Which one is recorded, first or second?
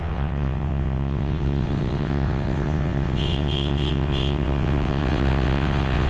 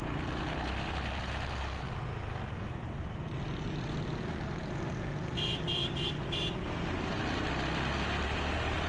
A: second